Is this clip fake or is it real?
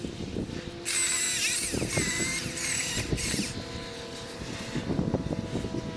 real